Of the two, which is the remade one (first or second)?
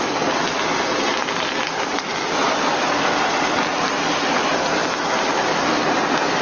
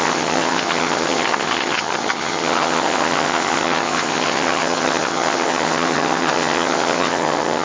second